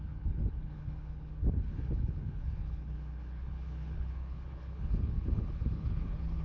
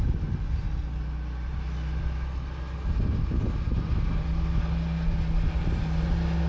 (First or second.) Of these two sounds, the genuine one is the second